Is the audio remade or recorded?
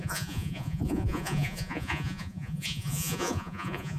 remade